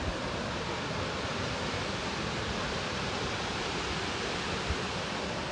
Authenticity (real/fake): fake